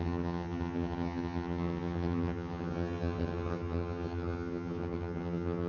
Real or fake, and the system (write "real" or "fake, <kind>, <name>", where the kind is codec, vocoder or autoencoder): fake, vocoder, HiFi-GAN